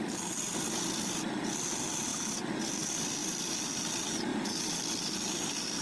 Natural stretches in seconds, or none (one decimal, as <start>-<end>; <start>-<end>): 0.0-5.8